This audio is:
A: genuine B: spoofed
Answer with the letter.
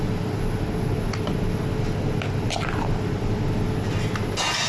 A